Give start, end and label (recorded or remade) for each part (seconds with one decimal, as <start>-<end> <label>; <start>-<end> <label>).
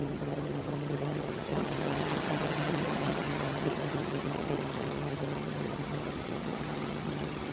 0.0-7.5 remade